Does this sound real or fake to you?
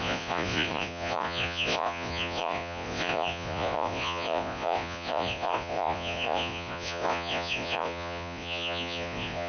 fake